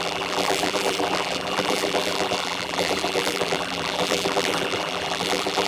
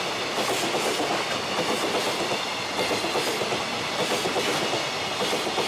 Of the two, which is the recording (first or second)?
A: second